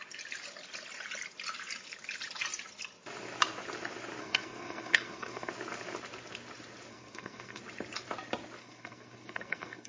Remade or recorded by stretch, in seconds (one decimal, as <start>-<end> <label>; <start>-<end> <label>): 0.0-4.2 recorded; 4.2-5.5 remade; 5.5-6.9 recorded; 6.9-7.6 remade; 7.6-8.6 recorded; 8.6-9.9 remade